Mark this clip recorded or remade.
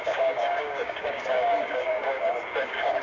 remade